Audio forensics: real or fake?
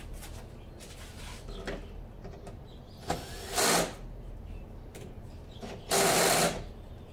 real